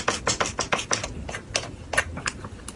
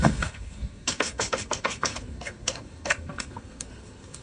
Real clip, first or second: first